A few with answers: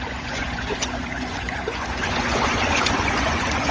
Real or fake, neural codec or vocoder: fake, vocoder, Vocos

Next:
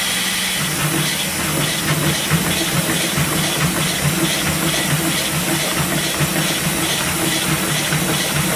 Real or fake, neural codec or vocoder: real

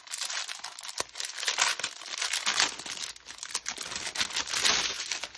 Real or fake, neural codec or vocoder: real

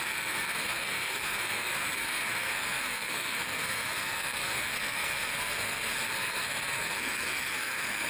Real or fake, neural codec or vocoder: fake, codec, SNAC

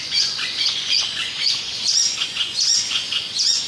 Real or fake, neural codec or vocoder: fake, vocoder, Vocos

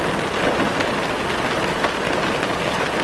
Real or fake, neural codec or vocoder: real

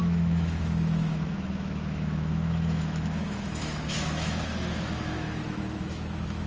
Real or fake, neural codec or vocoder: fake, autoencoder, DAC-VAE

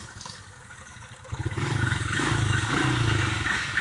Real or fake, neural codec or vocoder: fake, codec, DAC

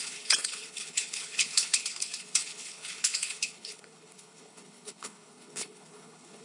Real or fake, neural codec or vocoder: fake, codec, HILCodec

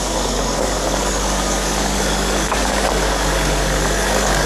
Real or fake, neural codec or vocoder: fake, codec, DAC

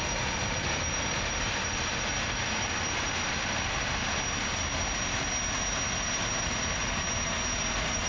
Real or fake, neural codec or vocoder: real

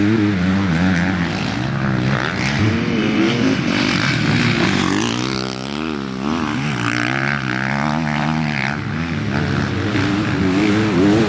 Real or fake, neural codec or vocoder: real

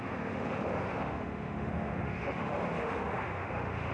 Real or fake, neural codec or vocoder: fake, autoencoder, DAC-VAE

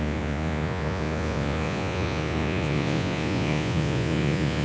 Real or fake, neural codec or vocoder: fake, vocoder, Vocos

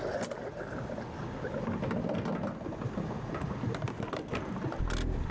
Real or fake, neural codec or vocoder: real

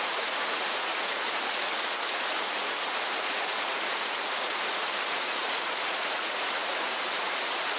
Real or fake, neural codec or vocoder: fake, vocoder, Vocos